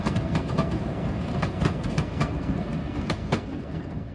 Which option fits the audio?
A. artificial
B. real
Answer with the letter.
A